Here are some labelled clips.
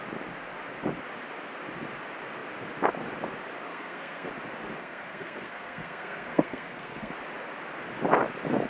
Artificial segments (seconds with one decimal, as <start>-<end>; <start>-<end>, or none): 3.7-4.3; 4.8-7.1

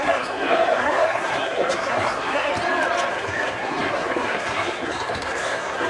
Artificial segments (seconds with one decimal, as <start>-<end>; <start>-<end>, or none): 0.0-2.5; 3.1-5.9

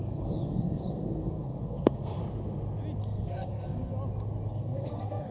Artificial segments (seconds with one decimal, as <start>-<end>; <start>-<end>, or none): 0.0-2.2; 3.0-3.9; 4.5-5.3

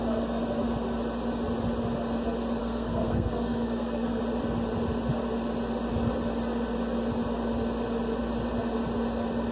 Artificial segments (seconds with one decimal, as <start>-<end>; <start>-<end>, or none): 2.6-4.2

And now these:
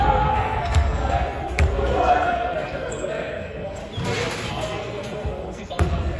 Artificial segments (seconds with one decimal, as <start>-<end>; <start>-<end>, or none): 0.0-3.8; 4.5-6.2

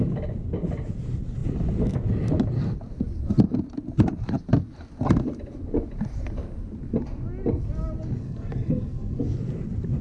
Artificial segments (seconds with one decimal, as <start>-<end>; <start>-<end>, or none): 8.2-9.2

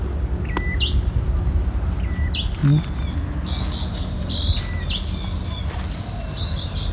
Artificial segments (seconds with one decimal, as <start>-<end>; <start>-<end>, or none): none